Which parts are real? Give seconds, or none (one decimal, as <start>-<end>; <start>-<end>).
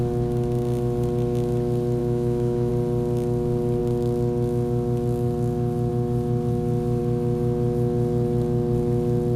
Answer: 0.0-2.0; 2.7-9.4